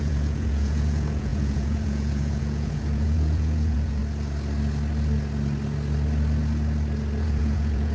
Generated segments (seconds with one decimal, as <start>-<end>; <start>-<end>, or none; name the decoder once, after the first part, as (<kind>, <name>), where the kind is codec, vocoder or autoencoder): 0.0-4.0 (vocoder, Vocos); 7.2-7.9